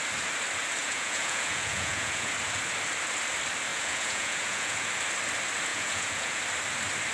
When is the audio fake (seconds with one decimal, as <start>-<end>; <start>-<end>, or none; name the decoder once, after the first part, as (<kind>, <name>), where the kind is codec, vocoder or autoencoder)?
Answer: 0.8-2.3 (vocoder, Vocos); 3.7-4.9; 5.7-6.4